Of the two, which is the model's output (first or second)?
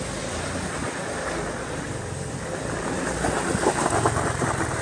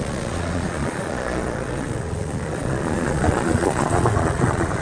second